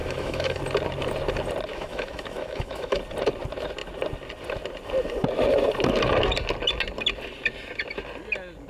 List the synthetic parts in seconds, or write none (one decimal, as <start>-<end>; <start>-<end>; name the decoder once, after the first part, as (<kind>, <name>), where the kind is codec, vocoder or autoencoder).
0.0-0.6 (autoencoder, DAC-VAE); 1.7-3.0